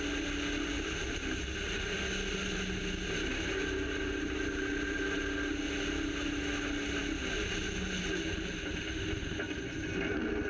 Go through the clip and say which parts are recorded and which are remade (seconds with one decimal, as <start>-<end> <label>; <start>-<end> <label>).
0.0-10.5 recorded